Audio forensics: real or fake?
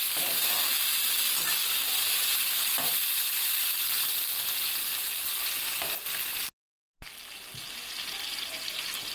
real